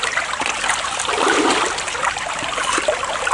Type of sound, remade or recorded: recorded